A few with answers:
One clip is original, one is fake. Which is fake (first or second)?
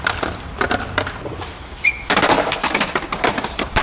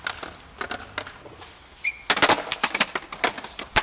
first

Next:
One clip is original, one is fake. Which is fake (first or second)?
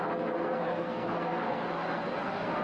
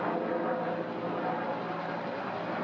first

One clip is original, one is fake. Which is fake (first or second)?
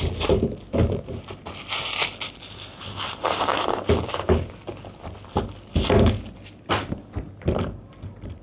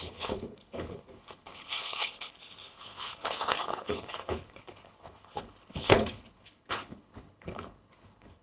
second